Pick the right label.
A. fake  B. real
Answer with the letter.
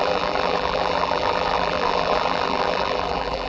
A